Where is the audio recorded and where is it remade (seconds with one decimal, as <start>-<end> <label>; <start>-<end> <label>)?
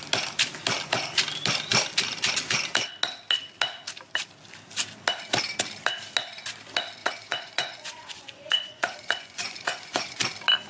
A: 0.0-7.0 recorded; 7.0-10.2 remade; 10.2-10.7 recorded